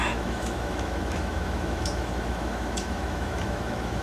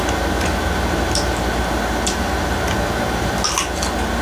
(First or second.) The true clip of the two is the second